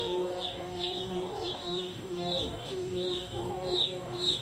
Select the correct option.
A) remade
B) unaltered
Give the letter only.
A